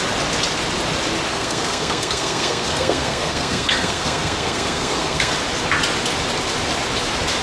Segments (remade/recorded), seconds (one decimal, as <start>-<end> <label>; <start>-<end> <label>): 0.0-1.3 recorded; 1.3-5.3 remade; 5.3-7.4 recorded